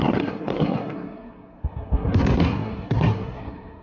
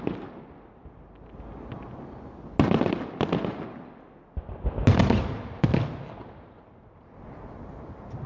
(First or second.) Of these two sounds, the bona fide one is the second